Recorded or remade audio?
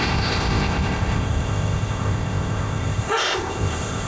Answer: remade